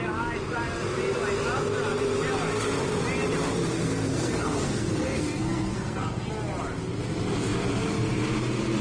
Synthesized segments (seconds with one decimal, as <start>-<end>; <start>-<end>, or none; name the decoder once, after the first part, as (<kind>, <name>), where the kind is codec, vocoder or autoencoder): 3.8-6.3 (codec, SNAC)